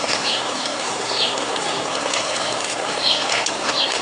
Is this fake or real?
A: fake